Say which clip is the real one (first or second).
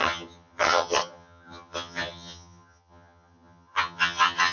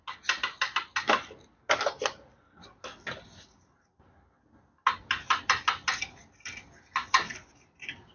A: second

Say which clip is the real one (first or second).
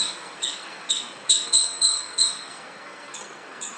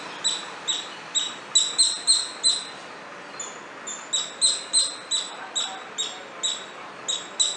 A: second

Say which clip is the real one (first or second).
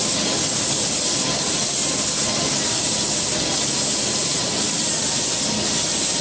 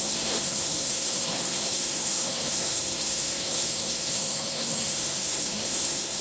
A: first